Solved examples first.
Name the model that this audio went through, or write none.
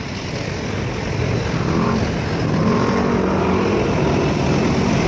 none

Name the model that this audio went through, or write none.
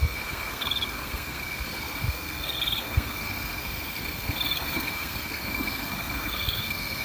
codec, SNAC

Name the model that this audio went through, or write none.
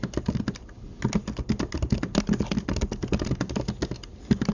none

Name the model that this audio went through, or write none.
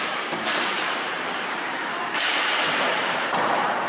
vocoder, BigVGAN v2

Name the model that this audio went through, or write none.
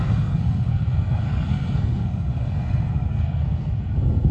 codec, SNAC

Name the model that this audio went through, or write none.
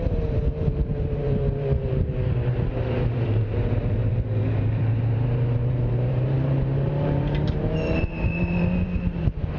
vocoder, BigVGAN v2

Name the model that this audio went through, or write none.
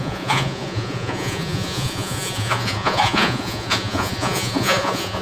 vocoder, Vocos